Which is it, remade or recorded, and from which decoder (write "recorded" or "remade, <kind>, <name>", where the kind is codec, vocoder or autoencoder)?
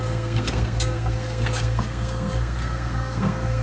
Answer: remade, codec, SNAC